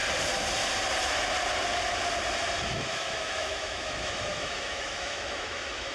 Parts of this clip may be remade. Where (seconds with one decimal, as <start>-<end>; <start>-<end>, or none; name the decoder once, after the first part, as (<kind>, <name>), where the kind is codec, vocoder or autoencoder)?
2.7-5.9 (autoencoder, DAC-VAE)